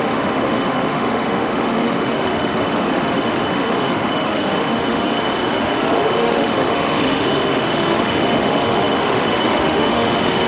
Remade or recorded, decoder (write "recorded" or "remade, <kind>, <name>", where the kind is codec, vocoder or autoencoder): remade, autoencoder, DAC-VAE